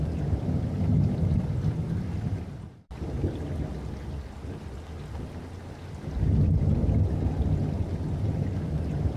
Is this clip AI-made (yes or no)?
no